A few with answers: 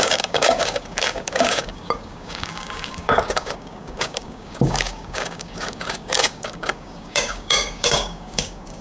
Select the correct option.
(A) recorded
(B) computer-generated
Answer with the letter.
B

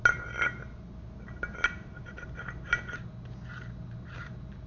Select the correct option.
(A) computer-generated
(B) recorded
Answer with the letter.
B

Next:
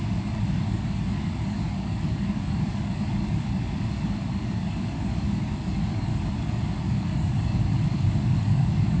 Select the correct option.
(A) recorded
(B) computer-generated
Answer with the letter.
B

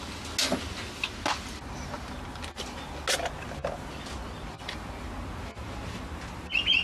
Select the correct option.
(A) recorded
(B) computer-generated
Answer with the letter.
A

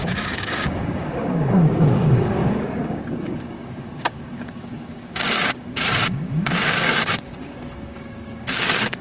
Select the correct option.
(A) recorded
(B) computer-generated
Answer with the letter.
B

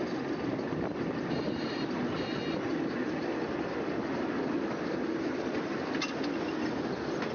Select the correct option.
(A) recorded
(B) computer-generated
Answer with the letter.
A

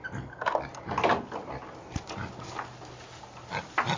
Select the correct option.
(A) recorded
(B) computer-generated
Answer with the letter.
A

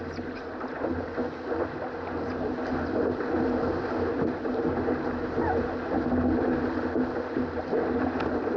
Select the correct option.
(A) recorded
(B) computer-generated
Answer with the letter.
A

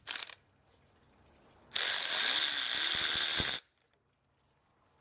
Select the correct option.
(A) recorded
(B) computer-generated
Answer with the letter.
A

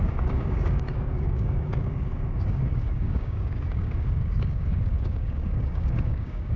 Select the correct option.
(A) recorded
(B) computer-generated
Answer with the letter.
B